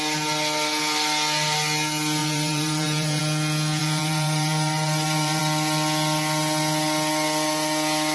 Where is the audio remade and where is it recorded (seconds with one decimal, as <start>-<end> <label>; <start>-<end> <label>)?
0.0-2.2 recorded; 2.2-3.2 remade; 3.2-3.8 recorded; 3.8-5.4 remade; 5.4-8.1 recorded

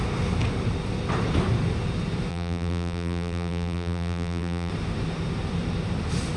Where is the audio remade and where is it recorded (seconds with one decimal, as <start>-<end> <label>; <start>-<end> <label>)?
0.0-2.3 recorded; 2.3-4.7 remade; 4.7-6.4 recorded